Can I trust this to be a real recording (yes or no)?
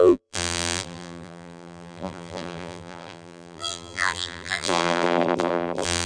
no